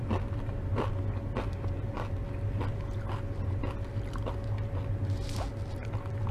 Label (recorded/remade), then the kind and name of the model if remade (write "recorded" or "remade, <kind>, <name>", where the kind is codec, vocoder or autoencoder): recorded